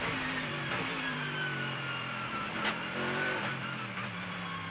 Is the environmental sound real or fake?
fake